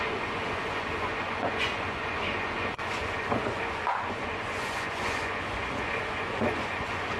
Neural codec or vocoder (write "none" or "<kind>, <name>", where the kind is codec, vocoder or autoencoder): vocoder, Vocos